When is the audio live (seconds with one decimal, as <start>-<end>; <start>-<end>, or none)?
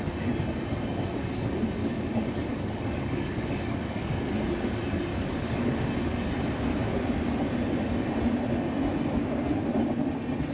0.0-1.8; 4.1-5.1; 5.9-10.5